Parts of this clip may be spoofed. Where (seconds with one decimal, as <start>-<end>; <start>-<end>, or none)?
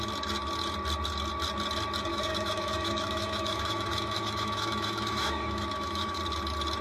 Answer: 2.1-6.2